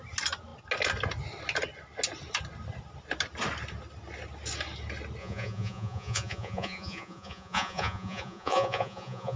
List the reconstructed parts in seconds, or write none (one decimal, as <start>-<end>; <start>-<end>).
5.2-9.4